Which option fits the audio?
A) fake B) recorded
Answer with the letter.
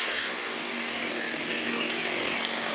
A